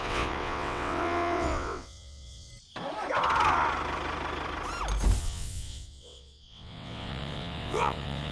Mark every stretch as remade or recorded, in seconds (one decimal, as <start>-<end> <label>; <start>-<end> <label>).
0.0-2.5 remade; 2.5-5.2 recorded; 5.2-8.3 remade